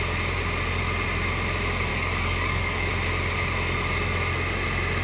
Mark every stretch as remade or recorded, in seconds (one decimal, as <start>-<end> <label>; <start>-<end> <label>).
0.0-1.9 recorded; 1.9-2.9 remade; 2.9-5.0 recorded